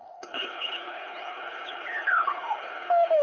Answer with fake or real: fake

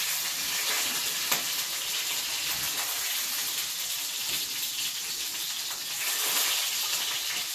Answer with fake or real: real